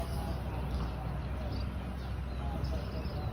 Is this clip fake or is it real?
real